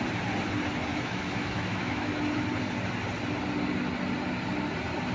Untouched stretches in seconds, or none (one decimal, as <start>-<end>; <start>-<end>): 0.0-0.9; 2.2-5.1